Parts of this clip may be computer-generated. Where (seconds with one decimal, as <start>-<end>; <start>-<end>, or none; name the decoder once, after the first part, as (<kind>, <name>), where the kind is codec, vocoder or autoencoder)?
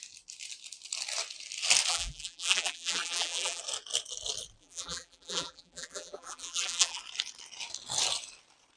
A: 1.9-3.6 (vocoder, BigVGAN v2); 4.6-7.0